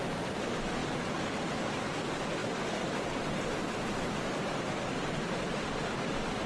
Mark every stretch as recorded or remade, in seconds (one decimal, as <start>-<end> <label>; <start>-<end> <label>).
0.0-0.8 remade; 0.8-1.4 recorded; 1.4-2.4 remade; 2.4-4.0 recorded; 4.0-6.5 remade

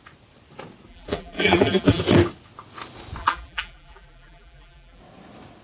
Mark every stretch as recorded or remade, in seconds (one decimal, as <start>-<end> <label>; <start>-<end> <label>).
0.0-0.9 recorded; 0.9-2.0 remade; 2.0-3.2 recorded; 3.2-5.0 remade; 5.0-5.6 recorded

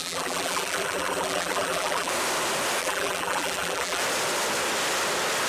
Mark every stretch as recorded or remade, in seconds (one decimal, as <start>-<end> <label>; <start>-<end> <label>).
0.0-2.1 remade; 2.1-2.8 recorded; 2.8-4.0 remade; 4.0-5.5 recorded

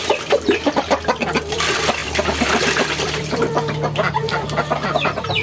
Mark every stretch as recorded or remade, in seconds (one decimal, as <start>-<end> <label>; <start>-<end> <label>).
0.0-5.4 remade

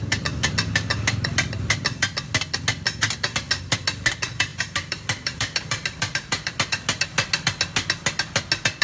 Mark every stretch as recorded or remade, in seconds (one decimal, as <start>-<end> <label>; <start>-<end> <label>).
0.0-4.5 recorded; 4.5-6.5 remade; 6.5-8.8 recorded

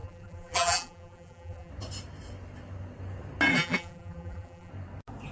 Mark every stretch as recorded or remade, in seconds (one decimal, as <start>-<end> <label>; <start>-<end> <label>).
0.0-1.7 remade; 1.7-3.5 recorded; 3.5-4.7 remade; 4.7-5.3 recorded

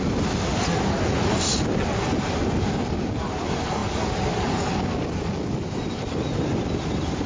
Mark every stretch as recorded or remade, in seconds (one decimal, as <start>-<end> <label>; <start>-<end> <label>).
0.0-7.3 recorded

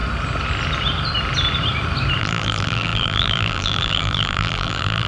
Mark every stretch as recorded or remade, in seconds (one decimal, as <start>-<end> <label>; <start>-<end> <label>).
0.0-2.2 recorded; 2.2-5.1 remade